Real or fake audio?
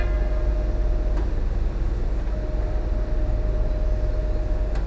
real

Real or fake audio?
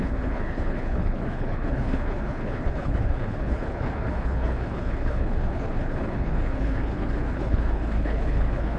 fake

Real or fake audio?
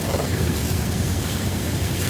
fake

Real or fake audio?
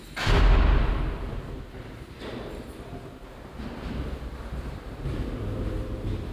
real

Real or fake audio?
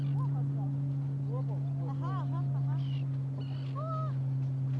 real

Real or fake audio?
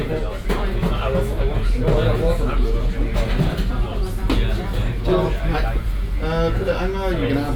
real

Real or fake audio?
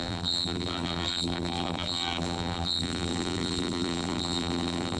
fake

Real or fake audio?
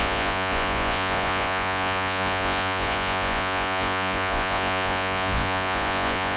fake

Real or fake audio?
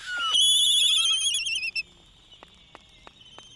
real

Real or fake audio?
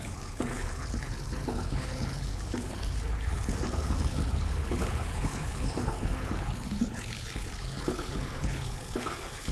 fake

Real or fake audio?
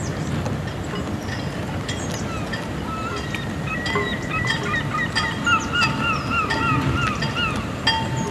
real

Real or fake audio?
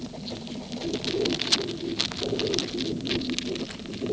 real